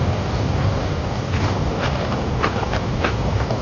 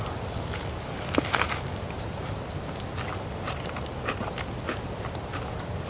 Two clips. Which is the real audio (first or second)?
second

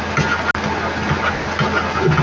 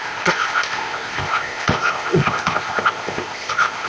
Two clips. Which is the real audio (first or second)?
first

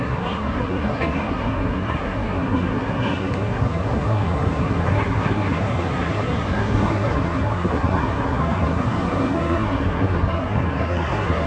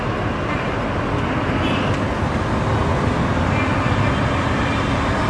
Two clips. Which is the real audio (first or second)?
second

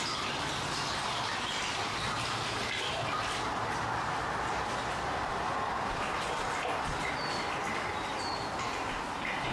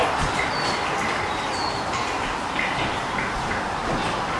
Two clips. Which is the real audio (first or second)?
first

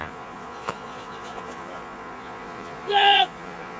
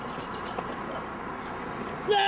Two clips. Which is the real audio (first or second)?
second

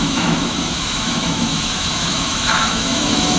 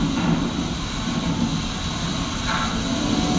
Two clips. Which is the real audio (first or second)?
second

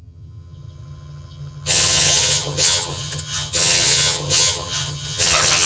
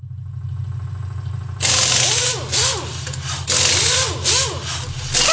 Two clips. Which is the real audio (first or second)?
second